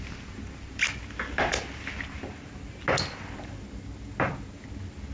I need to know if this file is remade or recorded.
recorded